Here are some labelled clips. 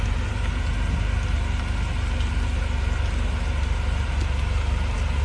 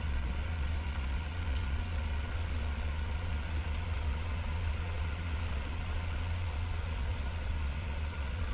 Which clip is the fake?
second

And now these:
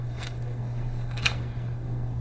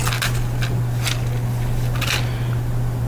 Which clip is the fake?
first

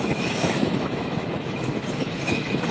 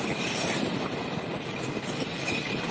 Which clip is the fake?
first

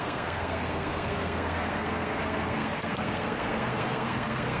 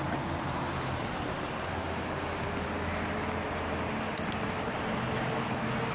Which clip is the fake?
first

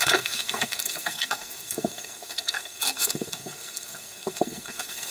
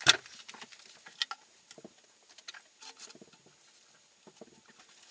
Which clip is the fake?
first